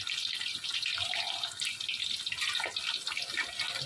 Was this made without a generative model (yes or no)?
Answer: yes